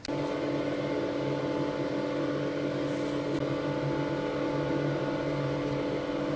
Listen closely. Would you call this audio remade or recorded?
recorded